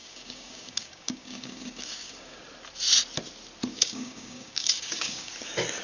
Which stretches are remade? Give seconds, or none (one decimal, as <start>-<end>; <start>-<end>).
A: 0.0-2.4; 3.7-5.3